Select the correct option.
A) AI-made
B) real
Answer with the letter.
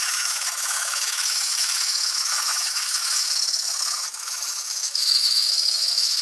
A